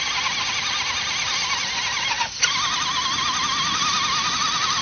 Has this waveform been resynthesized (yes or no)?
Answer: no